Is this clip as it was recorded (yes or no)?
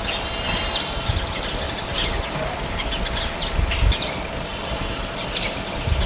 yes